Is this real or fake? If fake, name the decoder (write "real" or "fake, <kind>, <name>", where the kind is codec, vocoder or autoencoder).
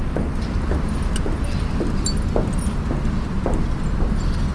real